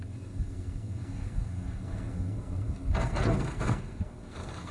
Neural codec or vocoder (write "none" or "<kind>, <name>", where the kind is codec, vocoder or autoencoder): codec, SNAC